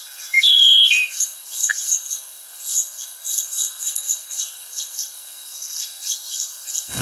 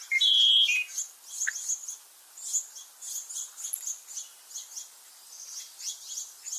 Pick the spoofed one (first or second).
first